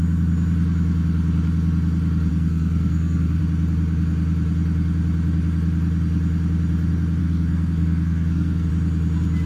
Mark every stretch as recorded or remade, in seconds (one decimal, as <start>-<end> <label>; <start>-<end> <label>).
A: 0.0-2.3 recorded; 2.3-3.4 remade; 3.4-7.2 recorded; 7.2-8.7 remade; 8.7-9.5 recorded

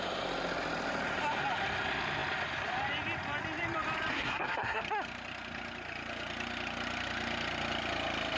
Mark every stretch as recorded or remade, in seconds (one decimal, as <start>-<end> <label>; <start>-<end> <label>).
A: 0.0-4.1 recorded; 4.1-4.8 remade; 4.8-8.4 recorded

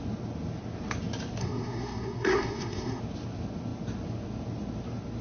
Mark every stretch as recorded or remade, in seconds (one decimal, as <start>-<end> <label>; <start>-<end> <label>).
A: 0.0-1.4 recorded; 1.4-3.0 remade; 3.0-5.2 recorded

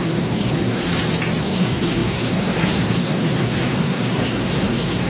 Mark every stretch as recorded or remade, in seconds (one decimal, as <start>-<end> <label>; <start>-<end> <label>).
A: 0.0-0.9 remade; 0.9-1.4 recorded; 1.4-5.1 remade